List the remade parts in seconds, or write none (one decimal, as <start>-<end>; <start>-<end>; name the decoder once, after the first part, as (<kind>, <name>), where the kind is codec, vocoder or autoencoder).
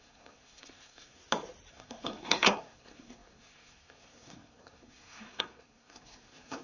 0.0-1.2 (codec, SNAC); 1.7-6.6